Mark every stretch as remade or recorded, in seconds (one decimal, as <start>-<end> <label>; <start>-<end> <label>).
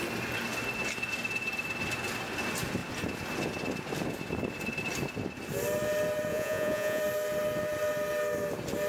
0.0-6.3 recorded; 6.3-7.0 remade; 7.0-8.9 recorded